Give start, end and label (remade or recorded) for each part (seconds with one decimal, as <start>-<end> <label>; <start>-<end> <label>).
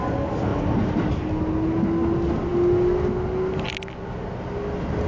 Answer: 0.0-5.1 recorded